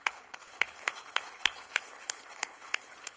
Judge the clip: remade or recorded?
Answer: remade